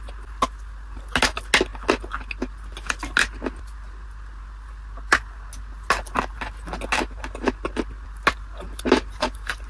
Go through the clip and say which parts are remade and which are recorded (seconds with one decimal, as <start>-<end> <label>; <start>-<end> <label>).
0.0-9.7 recorded